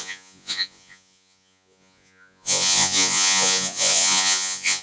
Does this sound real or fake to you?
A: fake